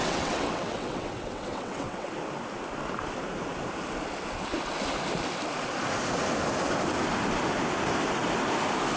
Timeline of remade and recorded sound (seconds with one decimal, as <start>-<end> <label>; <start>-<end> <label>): 0.0-2.1 remade; 2.1-9.0 recorded

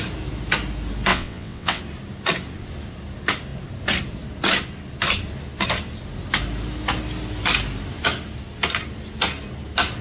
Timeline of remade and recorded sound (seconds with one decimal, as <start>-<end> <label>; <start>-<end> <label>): 0.0-1.1 recorded; 1.1-1.8 remade; 1.8-10.0 recorded

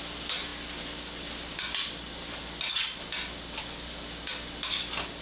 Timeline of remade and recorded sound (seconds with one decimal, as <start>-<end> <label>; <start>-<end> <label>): 0.0-5.2 recorded

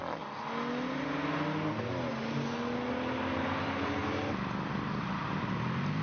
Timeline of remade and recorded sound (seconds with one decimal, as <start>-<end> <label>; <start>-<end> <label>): 0.0-6.0 recorded

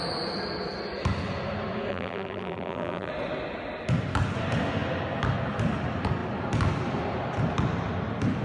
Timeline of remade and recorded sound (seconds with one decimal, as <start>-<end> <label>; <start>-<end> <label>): 0.0-1.9 recorded; 1.9-3.1 remade; 3.1-8.4 recorded